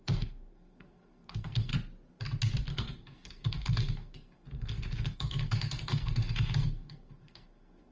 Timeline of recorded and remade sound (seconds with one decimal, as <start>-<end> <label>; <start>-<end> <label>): 0.0-1.7 remade; 1.7-2.7 recorded; 2.7-7.9 remade